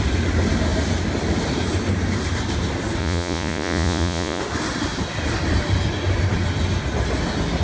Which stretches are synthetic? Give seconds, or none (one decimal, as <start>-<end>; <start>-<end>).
3.0-4.4

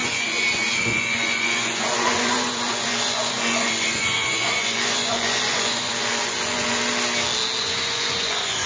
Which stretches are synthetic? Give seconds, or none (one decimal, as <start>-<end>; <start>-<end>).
0.0-6.8; 7.6-8.7